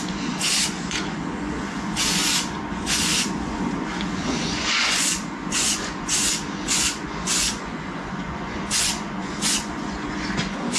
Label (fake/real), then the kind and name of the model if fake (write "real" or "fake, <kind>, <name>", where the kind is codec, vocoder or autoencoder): fake, vocoder, Vocos